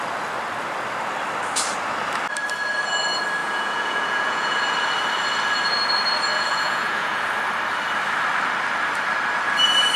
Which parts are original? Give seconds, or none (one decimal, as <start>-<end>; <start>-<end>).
0.0-3.4; 4.6-6.3; 7.2-10.0